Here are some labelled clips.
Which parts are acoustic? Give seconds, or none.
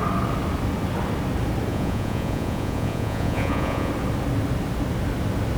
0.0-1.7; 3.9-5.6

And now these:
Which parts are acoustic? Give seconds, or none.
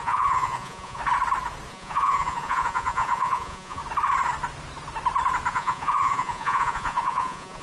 1.0-1.7; 3.8-5.5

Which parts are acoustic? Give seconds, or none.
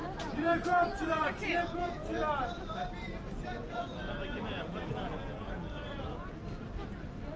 2.0-3.7; 6.4-7.4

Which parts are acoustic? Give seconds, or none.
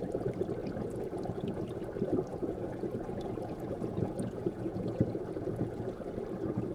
0.0-0.6; 1.6-2.3; 6.2-6.7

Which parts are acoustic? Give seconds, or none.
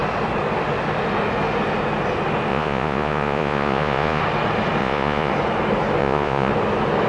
0.0-2.5; 4.2-4.8; 5.3-6.0; 6.5-7.1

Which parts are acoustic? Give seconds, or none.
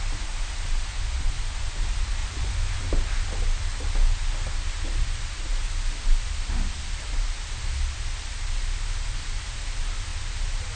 0.0-0.9; 1.8-2.2; 2.8-10.8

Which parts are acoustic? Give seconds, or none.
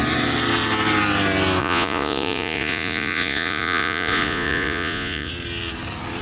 0.0-1.6; 5.3-6.2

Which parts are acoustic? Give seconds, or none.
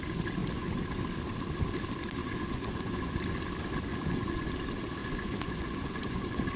0.0-2.2; 3.2-3.9; 4.5-5.0